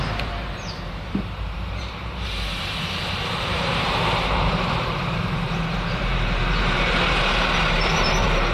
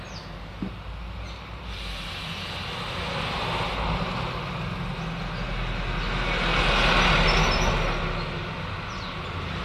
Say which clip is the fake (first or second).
first